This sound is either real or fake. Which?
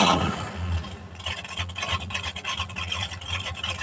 fake